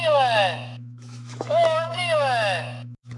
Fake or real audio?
fake